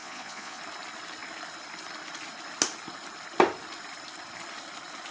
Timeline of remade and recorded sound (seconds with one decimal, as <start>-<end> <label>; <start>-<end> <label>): 0.0-0.6 remade; 0.6-5.1 recorded